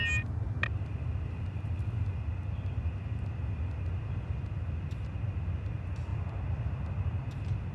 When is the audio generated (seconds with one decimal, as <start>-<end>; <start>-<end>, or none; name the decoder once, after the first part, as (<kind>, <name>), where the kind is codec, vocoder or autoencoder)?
none